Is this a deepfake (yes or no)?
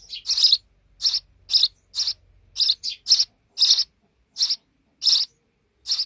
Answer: no